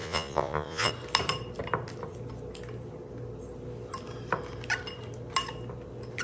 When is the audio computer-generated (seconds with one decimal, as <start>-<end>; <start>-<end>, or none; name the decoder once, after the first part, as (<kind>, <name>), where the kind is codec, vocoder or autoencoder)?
0.0-0.9 (vocoder, Vocos)